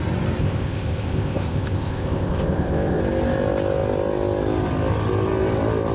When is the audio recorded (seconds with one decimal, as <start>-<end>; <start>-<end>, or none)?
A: 0.0-0.4; 3.0-5.9